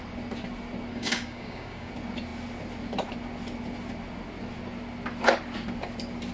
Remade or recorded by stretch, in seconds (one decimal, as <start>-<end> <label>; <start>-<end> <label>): 0.0-0.9 recorded; 0.9-1.9 remade; 1.9-6.3 recorded